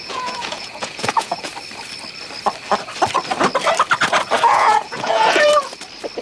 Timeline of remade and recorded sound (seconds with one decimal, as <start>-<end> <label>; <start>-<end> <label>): 0.0-1.5 remade; 1.5-4.5 recorded; 4.5-5.5 remade; 5.5-6.2 recorded